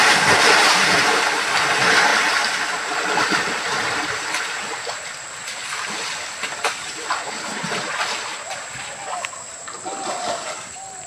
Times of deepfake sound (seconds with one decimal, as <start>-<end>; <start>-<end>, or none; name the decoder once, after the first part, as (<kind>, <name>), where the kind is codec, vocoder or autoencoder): 0.0-2.1 (vocoder, BigVGAN v2); 3.2-11.1

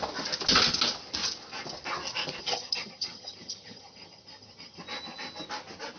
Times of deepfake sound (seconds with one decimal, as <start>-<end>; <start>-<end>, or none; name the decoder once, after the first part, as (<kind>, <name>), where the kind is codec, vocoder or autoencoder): 2.4-4.8 (vocoder, HiFi-GAN)

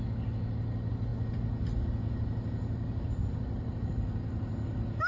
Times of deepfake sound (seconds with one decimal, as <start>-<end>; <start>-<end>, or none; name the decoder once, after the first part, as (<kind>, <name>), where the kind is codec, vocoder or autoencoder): none

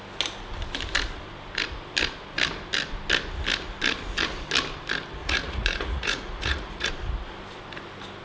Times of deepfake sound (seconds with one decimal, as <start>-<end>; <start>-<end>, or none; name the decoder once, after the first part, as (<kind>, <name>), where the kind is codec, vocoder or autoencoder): 5.2-6.9 (vocoder, Vocos)